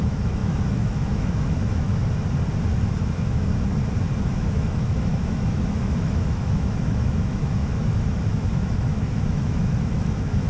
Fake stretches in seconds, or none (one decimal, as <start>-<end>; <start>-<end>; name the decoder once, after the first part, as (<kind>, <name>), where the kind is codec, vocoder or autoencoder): 0.0-2.0 (autoencoder, DAC-VAE); 2.7-3.5; 4.3-10.5